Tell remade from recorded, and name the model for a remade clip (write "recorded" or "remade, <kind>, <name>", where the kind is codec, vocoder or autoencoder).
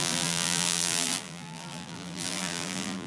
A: remade, vocoder, BigVGAN v2